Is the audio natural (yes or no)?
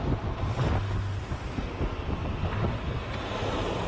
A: yes